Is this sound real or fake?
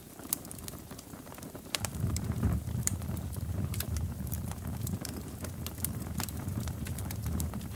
fake